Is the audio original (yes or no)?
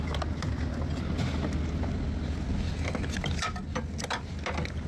yes